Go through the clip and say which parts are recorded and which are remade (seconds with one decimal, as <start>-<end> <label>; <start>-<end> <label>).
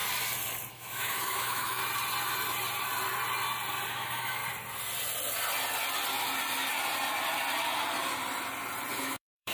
0.0-0.7 recorded; 0.7-1.8 remade; 1.8-3.9 recorded; 3.9-4.4 remade; 4.4-9.0 recorded; 9.0-9.5 remade